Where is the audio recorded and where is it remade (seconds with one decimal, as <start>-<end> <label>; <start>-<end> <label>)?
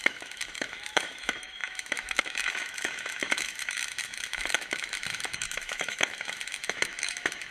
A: 0.0-7.5 remade